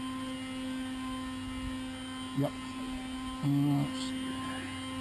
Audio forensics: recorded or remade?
recorded